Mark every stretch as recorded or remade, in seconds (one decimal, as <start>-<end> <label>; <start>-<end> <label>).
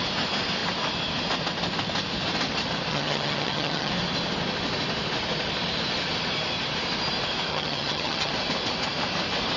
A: 0.0-2.9 recorded; 2.9-3.9 remade; 3.9-7.5 recorded; 7.5-8.3 remade; 8.3-9.6 recorded